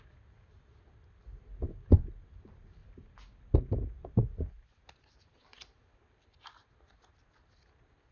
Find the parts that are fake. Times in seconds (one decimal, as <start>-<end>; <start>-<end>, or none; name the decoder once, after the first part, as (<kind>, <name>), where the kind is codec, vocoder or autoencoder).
none